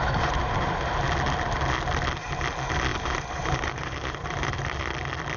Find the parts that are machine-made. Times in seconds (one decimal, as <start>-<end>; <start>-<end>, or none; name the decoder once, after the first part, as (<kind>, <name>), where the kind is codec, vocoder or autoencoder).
0.0-0.9 (vocoder, BigVGAN v2); 2.9-4.8